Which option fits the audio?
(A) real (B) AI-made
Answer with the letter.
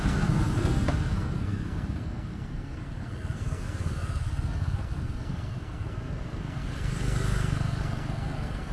B